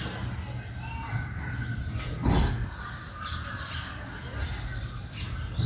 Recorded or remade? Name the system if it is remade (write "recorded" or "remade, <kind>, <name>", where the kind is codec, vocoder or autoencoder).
recorded